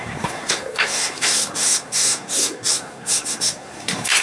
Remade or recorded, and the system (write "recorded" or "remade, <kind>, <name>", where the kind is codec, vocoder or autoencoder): remade, codec, SNAC